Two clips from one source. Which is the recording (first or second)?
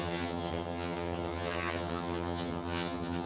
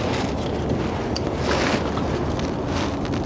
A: second